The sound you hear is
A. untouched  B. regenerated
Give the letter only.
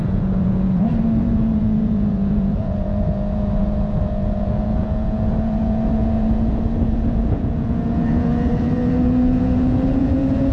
B